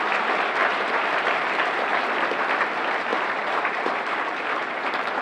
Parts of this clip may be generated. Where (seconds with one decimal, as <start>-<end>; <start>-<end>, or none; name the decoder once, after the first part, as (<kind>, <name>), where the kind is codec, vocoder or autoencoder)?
0.6-2.1 (vocoder, BigVGAN v2); 3.1-5.2